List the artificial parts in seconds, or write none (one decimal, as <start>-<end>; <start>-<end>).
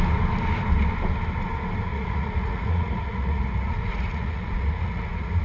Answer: 1.9-5.4